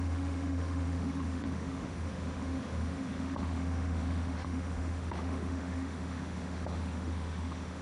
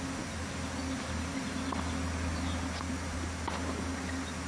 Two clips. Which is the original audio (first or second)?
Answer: second